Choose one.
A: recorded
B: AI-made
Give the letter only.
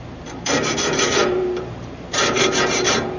B